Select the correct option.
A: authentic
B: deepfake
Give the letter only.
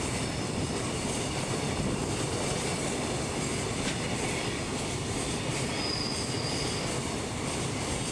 A